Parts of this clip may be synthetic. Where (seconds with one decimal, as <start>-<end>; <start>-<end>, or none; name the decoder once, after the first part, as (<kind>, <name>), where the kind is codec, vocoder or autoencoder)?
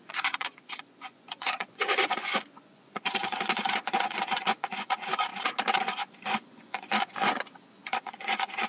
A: 0.0-5.3 (vocoder, Vocos); 5.8-8.7